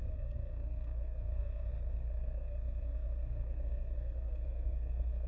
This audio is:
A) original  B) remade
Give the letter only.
B